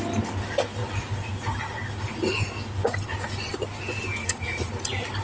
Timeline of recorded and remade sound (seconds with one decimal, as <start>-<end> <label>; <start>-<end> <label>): 0.0-4.2 recorded; 4.2-4.7 remade; 4.7-5.2 recorded